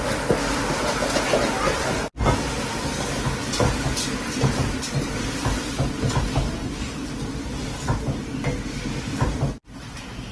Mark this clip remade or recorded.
recorded